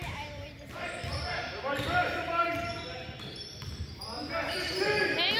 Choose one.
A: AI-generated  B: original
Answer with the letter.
A